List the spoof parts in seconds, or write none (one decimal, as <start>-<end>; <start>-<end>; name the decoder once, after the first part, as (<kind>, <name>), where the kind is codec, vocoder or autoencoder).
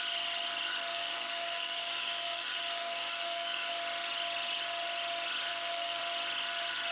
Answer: 0.9-3.7 (codec, DAC); 5.5-6.0